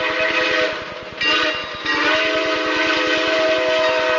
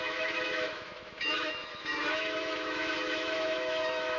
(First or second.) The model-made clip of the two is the second